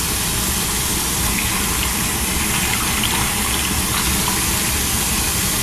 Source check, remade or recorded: recorded